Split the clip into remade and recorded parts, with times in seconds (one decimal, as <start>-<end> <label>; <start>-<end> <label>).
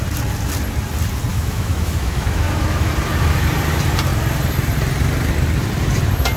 0.0-1.3 recorded; 1.3-2.9 remade; 2.9-6.4 recorded